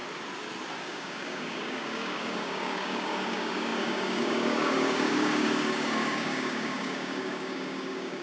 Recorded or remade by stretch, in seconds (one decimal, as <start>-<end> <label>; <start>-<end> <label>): 0.0-0.8 recorded; 0.8-8.2 remade

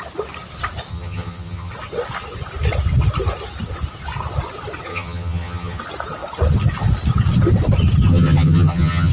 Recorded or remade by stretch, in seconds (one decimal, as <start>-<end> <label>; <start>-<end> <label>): 0.0-0.9 recorded; 0.9-1.7 remade; 1.7-4.9 recorded; 4.9-5.8 remade; 5.8-8.1 recorded; 8.1-9.1 remade

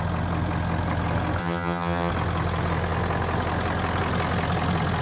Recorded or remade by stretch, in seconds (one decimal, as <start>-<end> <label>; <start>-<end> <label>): 0.0-1.4 recorded; 1.4-2.1 remade; 2.1-5.0 recorded

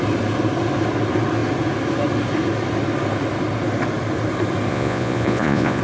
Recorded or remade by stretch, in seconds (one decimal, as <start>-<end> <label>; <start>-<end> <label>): 0.0-4.7 recorded; 4.7-5.8 remade

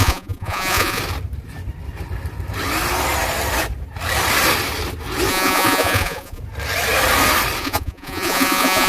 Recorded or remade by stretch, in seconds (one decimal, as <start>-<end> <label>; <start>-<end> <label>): 0.0-1.0 remade; 1.0-5.3 recorded; 5.3-6.4 remade; 6.4-7.6 recorded; 7.6-8.9 remade

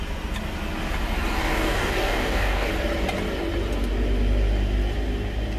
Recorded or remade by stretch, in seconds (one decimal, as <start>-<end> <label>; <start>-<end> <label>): 0.0-1.4 recorded; 1.4-2.7 remade; 2.7-5.6 recorded